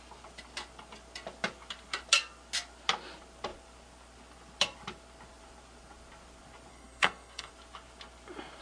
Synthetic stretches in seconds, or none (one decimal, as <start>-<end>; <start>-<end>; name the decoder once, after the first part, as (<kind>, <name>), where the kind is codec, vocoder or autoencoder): 6.7-7.5 (codec, SNAC)